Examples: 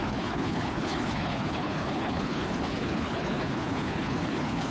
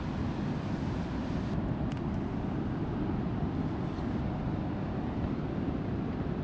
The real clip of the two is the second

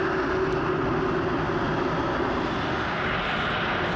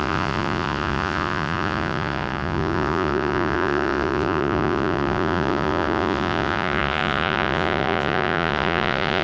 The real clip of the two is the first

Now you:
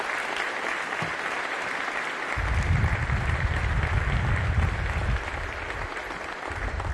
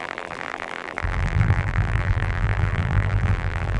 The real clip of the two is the first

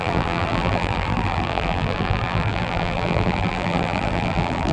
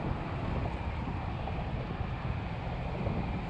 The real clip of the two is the second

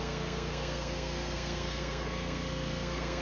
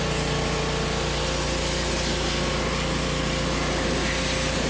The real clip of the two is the second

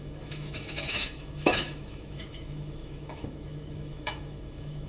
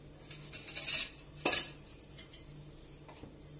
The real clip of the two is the second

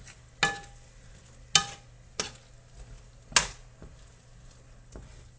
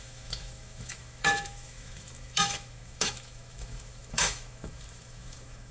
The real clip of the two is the first